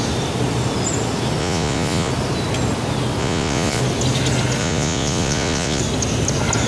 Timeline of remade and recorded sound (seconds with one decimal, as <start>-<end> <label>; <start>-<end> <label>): 0.0-1.4 recorded; 1.4-2.1 remade; 2.1-3.2 recorded; 3.2-3.8 remade; 3.8-4.6 recorded; 4.6-5.8 remade; 5.8-6.7 recorded